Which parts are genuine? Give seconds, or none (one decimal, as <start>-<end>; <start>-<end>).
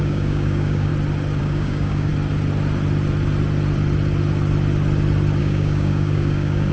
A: 0.9-1.4; 2.1-5.4